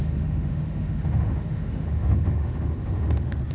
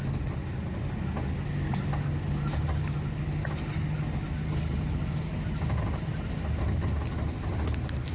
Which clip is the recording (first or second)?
second